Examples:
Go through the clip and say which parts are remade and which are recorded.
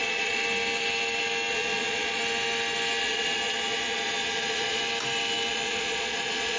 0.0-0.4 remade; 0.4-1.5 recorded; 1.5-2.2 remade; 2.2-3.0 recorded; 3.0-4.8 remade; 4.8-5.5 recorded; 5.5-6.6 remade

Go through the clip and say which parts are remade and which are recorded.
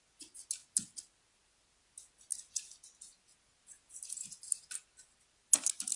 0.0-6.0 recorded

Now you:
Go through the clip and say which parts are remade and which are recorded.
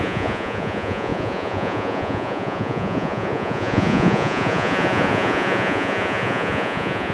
0.0-7.1 remade